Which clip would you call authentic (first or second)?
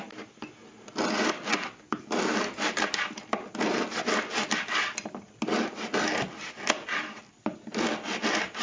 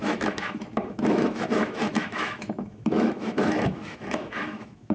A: first